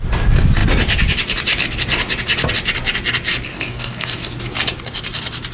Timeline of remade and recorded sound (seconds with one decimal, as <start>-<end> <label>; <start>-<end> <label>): 0.0-3.5 recorded; 3.5-4.3 remade; 4.3-5.5 recorded